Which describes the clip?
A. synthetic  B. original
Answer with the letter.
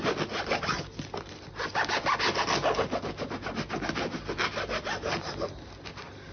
B